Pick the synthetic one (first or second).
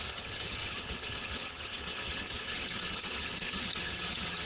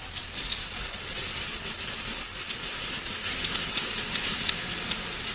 first